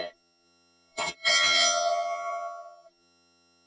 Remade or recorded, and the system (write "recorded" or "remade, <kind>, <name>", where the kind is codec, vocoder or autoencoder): remade, vocoder, HiFi-GAN